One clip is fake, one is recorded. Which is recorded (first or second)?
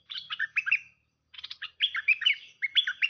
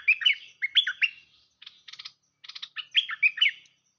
second